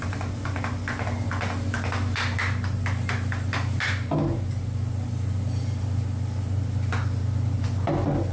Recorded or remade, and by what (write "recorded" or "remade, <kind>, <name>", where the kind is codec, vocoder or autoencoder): recorded